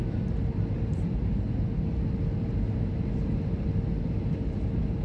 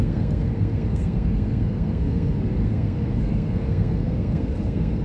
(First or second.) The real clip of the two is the first